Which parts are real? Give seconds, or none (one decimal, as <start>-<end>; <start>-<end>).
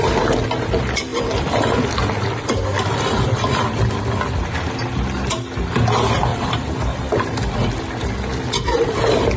0.0-1.1; 3.9-6.3; 7.4-9.4